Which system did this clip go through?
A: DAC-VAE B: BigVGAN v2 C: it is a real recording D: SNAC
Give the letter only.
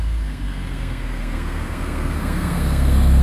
D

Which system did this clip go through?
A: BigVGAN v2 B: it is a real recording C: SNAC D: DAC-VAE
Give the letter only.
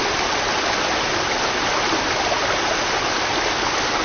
B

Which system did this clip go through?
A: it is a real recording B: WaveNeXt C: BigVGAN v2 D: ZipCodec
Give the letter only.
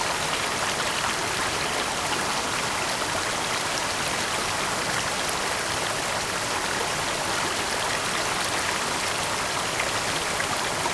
A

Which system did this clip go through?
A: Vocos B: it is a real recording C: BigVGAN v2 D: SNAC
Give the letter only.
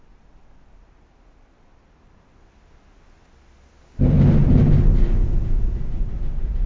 B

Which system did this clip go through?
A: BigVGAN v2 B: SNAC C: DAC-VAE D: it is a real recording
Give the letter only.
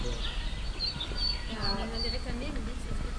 D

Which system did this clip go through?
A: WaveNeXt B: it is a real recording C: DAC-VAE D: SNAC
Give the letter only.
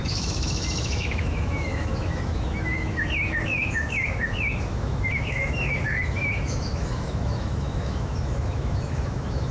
C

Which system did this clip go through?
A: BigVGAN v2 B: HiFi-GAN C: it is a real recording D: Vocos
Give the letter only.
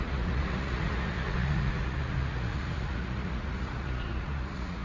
D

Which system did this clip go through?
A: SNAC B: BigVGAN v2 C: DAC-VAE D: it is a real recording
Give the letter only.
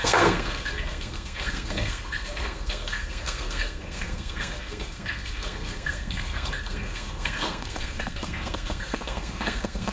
A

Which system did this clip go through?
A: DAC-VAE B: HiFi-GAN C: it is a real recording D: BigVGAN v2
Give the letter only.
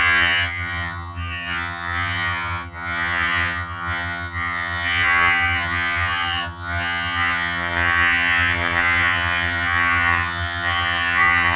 B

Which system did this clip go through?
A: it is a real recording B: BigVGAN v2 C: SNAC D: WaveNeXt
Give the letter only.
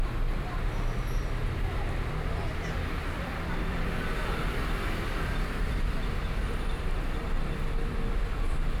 B